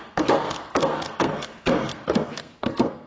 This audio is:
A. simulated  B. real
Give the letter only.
A